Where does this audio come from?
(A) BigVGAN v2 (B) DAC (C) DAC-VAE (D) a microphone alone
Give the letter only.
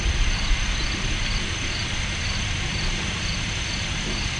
D